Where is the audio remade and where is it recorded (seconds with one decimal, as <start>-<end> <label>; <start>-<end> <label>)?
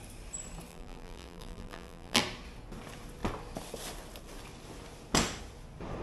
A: 0.0-0.7 recorded; 0.7-2.2 remade; 2.2-6.0 recorded